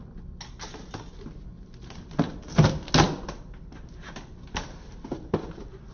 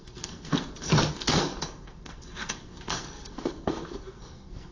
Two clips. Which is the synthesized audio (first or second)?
second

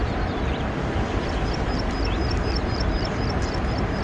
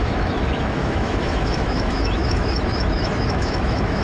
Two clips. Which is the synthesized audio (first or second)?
second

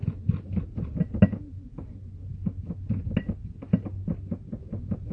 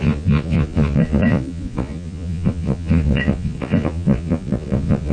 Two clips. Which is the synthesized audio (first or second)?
second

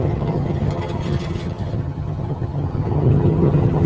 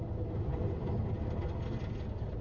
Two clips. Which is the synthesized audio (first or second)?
first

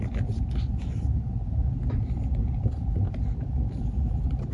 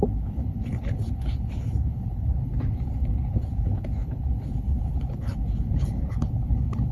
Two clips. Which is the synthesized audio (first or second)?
second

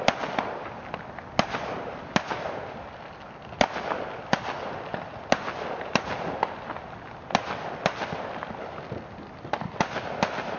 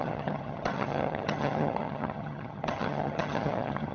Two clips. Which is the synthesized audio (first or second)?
second